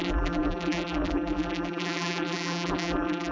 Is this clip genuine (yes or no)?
no